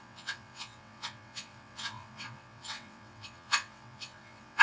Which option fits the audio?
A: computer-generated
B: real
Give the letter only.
A